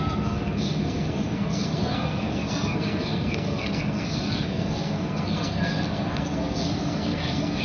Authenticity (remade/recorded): remade